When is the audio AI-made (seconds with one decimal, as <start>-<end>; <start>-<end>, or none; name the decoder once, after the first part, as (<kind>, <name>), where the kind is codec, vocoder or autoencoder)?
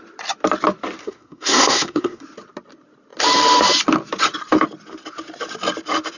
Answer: 1.0-2.2 (codec, SNAC)